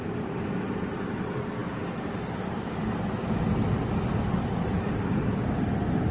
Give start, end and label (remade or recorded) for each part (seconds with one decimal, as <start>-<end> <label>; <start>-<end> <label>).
0.0-6.1 recorded

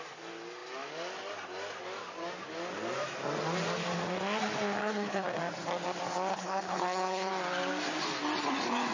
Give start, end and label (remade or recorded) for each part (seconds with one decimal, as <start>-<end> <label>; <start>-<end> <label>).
0.0-4.8 recorded; 4.8-5.4 remade; 5.4-6.3 recorded; 6.3-7.3 remade; 7.3-8.9 recorded

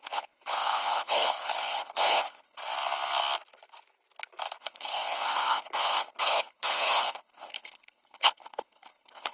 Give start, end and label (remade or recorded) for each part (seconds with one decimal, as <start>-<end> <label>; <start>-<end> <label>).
0.0-2.6 remade; 2.6-4.6 recorded; 4.6-9.3 remade

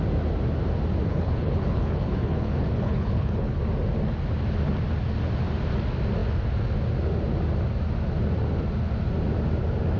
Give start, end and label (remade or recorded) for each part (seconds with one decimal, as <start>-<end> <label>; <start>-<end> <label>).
0.0-1.1 recorded; 1.1-3.6 remade; 3.6-10.0 recorded

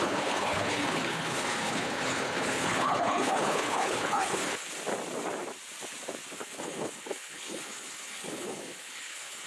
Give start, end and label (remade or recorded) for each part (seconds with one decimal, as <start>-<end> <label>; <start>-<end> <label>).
0.0-4.7 remade; 4.7-6.3 recorded; 6.3-9.5 remade

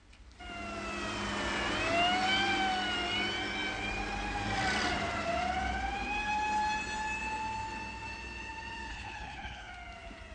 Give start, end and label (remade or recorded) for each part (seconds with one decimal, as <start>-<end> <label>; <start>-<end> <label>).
0.0-8.9 recorded; 8.9-9.7 remade; 9.7-10.3 recorded

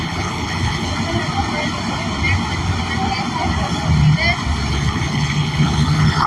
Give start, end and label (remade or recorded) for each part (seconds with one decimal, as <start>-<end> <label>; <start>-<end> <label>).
0.0-0.9 remade; 0.9-4.7 recorded; 4.7-6.3 remade

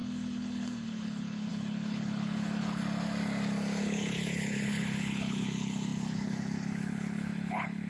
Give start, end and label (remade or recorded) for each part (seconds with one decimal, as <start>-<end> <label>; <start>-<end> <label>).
0.0-2.8 remade; 2.8-3.8 recorded; 3.8-7.9 remade